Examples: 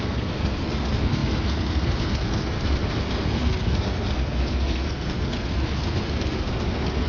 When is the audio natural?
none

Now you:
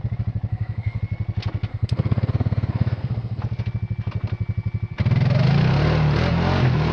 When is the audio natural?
0.0-0.5; 1.0-1.7; 3.4-6.9

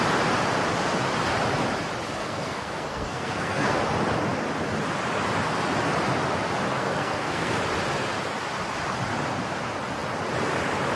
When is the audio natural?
0.0-2.2; 3.8-6.7; 7.6-11.0

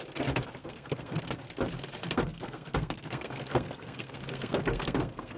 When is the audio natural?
0.0-0.6; 1.2-2.0

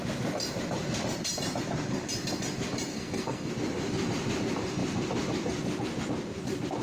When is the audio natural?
0.0-2.9; 3.5-6.8